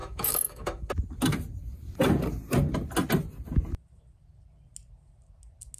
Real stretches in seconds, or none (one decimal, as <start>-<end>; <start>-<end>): 0.9-5.8